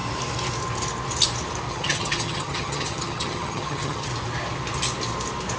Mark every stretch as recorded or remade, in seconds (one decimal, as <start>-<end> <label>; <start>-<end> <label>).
0.0-1.7 recorded; 1.7-4.1 remade; 4.1-5.6 recorded